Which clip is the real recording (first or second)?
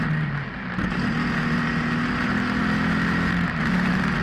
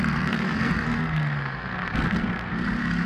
first